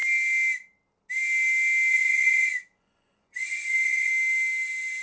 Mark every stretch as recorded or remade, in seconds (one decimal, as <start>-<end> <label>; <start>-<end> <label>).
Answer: 0.0-1.9 recorded; 1.9-4.1 remade; 4.1-5.0 recorded